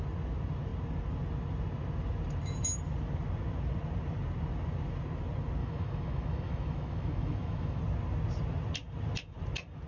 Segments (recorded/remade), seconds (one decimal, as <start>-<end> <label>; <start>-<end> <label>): 0.0-5.6 recorded; 5.6-7.8 remade; 7.8-9.9 recorded